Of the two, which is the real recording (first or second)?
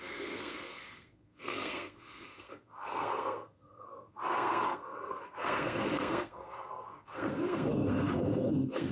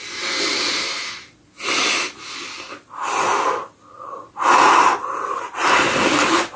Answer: second